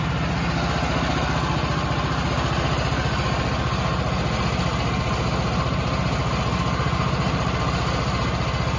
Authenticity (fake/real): real